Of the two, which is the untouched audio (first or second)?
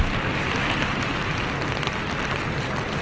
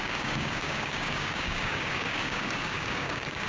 first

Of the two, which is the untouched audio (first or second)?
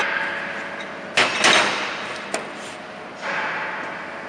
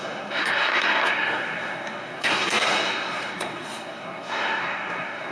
first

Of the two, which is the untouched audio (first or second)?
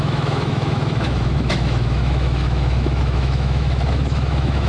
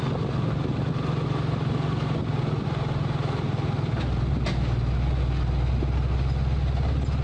second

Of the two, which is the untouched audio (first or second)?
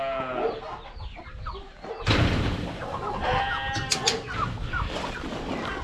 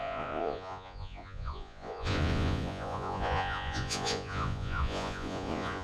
first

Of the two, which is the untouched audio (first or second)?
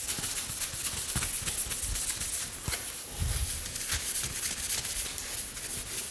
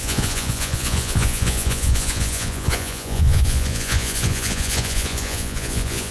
first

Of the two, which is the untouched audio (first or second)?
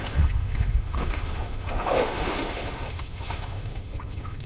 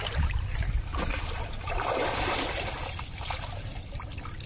second